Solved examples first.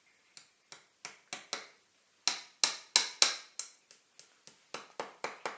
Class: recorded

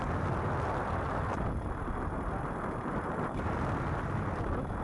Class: recorded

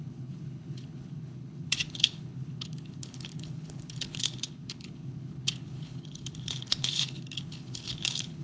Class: remade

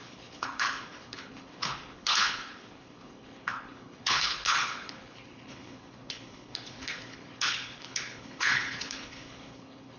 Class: remade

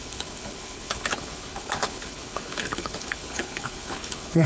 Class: remade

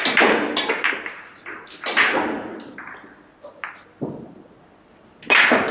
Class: recorded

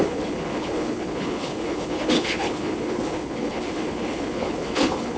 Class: remade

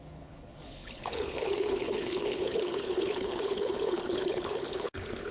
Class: remade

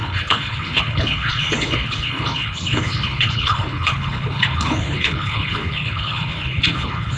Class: remade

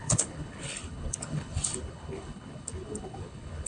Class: remade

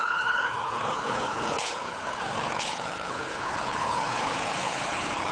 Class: remade